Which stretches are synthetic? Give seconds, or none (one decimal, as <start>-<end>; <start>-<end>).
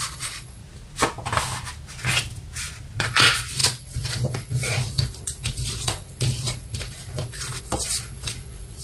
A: 0.0-0.6; 3.0-8.8